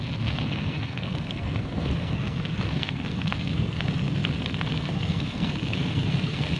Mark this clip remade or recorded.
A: remade